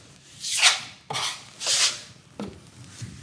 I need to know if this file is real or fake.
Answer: fake